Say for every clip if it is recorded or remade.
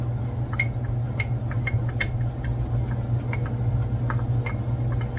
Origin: recorded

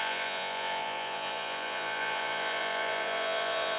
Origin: remade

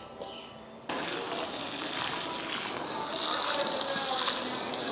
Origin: recorded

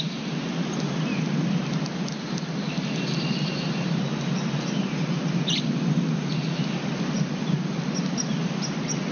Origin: recorded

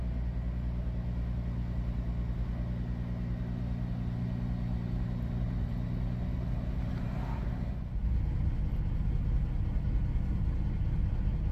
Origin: recorded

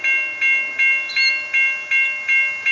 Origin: recorded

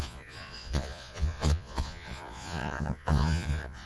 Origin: remade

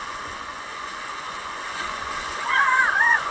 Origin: remade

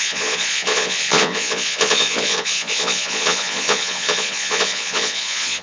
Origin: remade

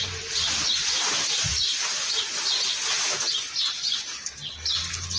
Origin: recorded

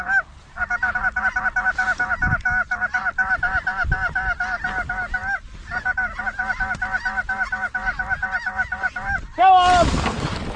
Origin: recorded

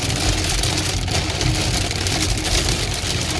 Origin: recorded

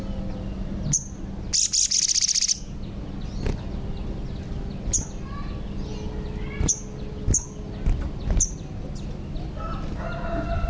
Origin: recorded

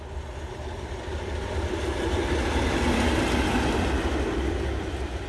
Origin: recorded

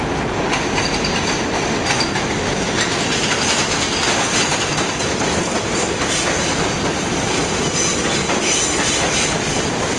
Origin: recorded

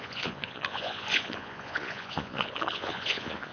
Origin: remade